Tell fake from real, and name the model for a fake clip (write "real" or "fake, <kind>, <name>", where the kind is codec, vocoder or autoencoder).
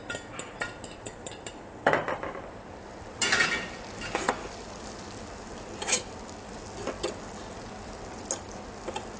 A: real